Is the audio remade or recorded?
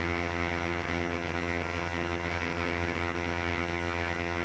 remade